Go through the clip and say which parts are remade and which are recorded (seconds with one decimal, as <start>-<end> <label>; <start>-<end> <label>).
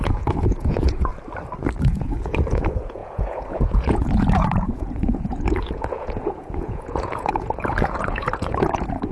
0.0-1.1 remade; 1.1-1.8 recorded; 1.8-9.1 remade